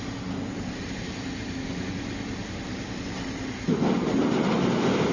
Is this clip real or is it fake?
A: real